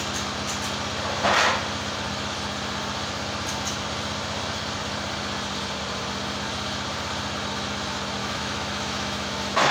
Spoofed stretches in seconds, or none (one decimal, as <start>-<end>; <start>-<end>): 8.2-9.7